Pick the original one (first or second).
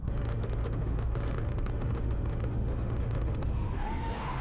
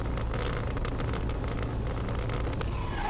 second